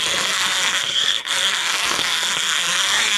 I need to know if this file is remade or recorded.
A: remade